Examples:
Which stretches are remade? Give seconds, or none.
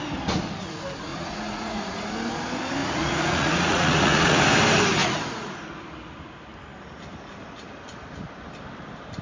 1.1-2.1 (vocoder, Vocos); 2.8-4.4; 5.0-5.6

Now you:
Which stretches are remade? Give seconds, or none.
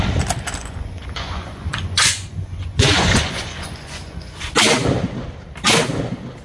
0.6-4.4 (vocoder, Vocos)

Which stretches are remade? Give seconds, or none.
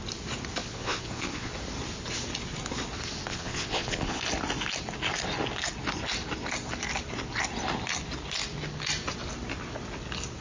0.6-1.5 (vocoder, Vocos); 3.3-4.2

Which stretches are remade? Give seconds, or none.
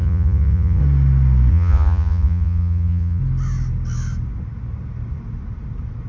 0.0-0.8 (vocoder, Vocos); 1.5-3.2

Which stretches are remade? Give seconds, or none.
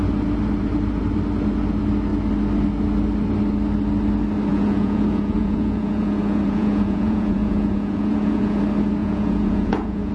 4.5-8.6 (vocoder, Vocos); 9.0-10.1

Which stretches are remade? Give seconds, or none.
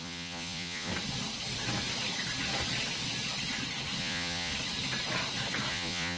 0.0-0.9 (vocoder, Vocos); 4.0-4.5; 5.7-6.2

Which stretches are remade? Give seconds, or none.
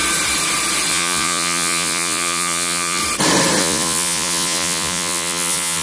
0.9-3.0 (vocoder, Vocos); 3.6-5.8